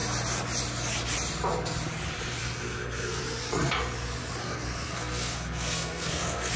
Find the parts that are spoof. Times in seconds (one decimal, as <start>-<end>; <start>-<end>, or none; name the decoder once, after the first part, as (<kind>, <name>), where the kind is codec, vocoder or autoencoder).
2.4-3.2 (codec, SNAC); 4.4-6.6